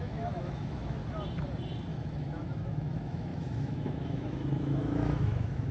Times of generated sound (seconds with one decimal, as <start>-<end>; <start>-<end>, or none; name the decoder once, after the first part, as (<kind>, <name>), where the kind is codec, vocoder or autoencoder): 0.0-1.0 (autoencoder, DAC-VAE); 1.9-5.7